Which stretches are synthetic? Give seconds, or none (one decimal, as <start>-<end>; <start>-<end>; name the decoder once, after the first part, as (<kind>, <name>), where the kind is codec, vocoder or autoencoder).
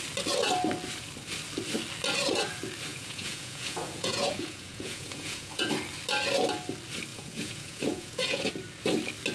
2.9-5.7 (vocoder, Vocos); 7.1-8.5